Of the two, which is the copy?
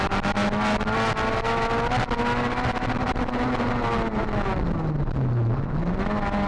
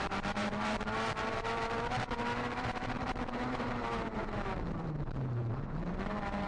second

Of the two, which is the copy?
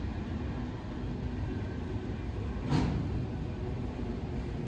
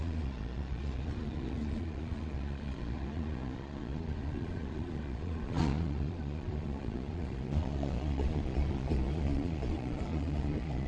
second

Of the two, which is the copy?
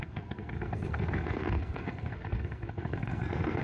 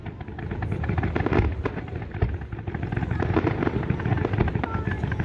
first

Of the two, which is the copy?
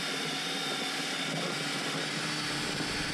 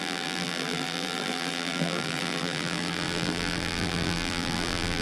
second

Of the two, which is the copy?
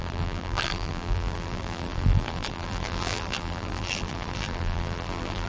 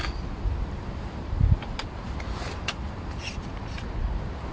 first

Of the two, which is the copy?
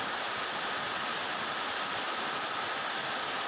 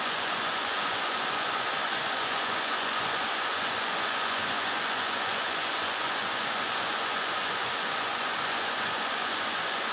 second